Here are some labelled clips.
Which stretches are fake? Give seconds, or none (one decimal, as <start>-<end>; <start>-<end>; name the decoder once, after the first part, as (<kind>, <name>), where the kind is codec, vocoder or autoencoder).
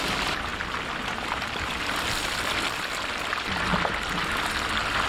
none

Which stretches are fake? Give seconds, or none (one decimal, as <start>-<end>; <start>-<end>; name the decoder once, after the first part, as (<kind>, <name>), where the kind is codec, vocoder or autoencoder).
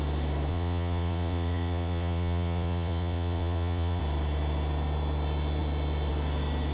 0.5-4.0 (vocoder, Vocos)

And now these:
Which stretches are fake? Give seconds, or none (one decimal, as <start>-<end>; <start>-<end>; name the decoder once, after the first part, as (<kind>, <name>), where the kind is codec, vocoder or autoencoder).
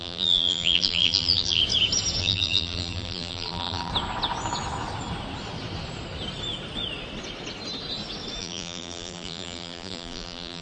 0.0-1.6 (vocoder, BigVGAN v2); 2.2-3.9; 8.4-10.6